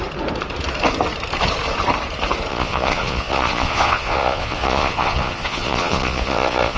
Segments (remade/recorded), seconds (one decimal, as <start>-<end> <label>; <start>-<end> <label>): 0.0-2.5 recorded; 2.5-6.8 remade